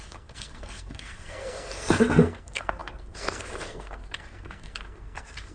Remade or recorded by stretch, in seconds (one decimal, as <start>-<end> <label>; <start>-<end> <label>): 0.0-5.5 remade